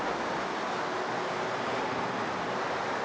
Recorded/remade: recorded